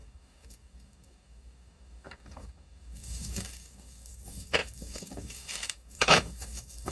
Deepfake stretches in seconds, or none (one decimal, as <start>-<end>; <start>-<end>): 0.0-6.9